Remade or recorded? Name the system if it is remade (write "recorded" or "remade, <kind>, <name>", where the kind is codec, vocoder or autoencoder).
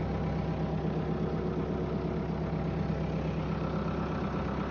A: recorded